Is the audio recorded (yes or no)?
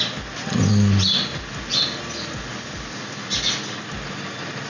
yes